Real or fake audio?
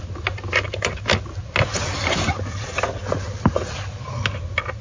real